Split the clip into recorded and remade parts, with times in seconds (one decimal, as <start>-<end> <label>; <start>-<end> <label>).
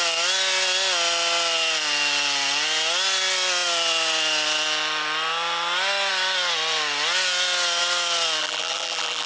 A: 0.0-8.4 recorded; 8.4-9.3 remade